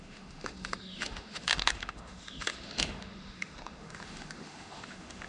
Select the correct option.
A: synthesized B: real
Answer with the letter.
A